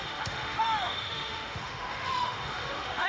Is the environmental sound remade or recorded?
remade